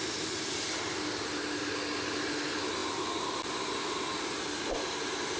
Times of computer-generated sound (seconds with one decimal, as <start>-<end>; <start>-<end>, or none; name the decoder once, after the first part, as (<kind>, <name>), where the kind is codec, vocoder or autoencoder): none